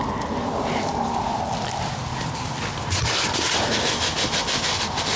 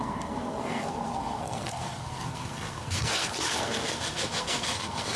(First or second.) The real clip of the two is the first